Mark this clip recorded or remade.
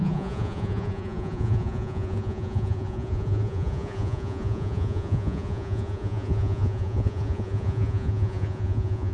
remade